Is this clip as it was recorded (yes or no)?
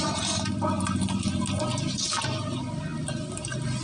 yes